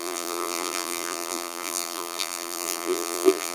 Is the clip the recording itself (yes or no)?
no